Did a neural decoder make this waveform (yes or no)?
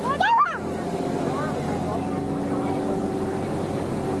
no